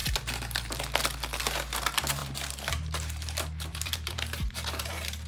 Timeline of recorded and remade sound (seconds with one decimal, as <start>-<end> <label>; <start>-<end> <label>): 0.0-2.2 recorded; 2.2-5.3 remade